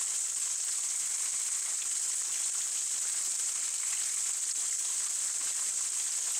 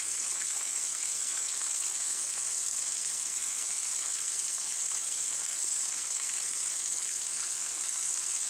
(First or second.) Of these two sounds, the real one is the first